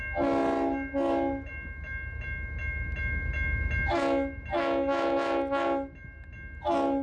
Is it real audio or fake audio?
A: real